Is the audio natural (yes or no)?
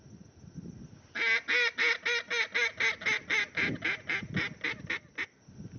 yes